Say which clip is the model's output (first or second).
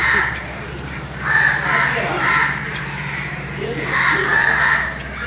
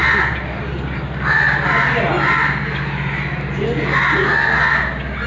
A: first